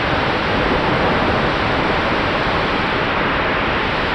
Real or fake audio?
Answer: fake